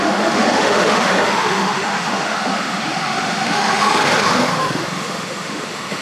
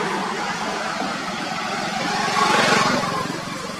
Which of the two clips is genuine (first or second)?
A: second